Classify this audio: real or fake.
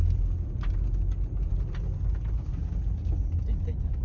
real